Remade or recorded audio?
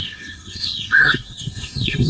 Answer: remade